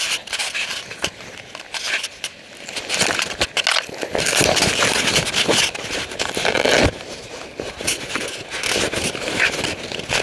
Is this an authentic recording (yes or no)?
yes